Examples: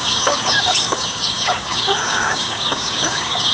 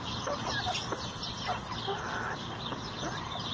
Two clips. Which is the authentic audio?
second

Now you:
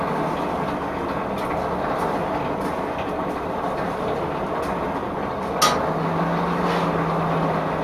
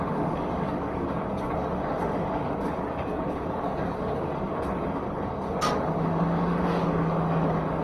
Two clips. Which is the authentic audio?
first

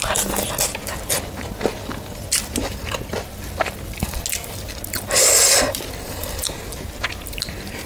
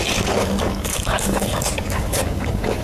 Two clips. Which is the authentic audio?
first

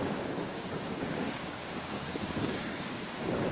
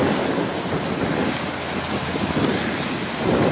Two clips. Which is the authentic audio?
second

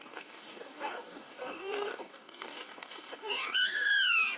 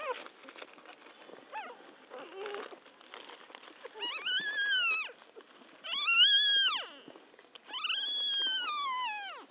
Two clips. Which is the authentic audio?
second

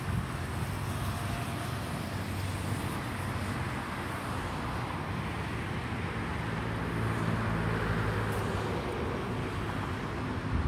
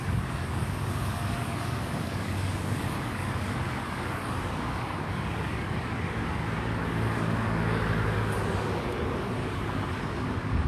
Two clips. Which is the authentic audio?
first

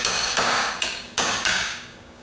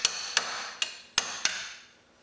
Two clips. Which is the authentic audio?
second